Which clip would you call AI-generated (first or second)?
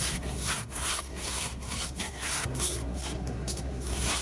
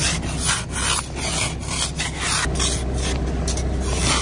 first